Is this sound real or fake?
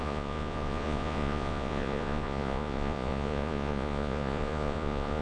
fake